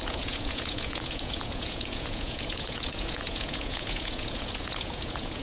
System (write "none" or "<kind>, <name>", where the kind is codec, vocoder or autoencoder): vocoder, Vocos